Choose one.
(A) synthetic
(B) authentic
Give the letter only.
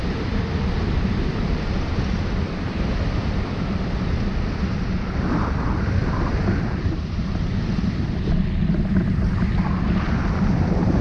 A